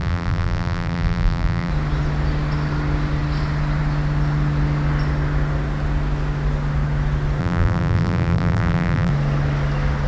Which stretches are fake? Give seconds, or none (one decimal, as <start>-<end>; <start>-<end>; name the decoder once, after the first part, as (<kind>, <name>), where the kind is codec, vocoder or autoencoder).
0.0-1.7 (vocoder, BigVGAN v2); 7.4-9.1